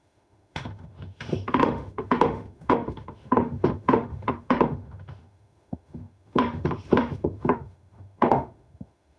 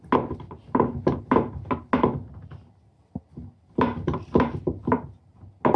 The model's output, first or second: first